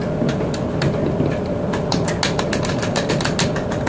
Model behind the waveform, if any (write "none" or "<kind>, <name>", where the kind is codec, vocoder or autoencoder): none